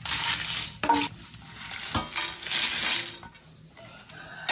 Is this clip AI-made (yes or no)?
no